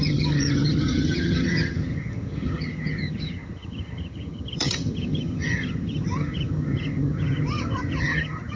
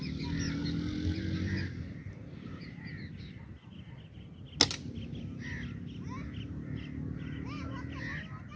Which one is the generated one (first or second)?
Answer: first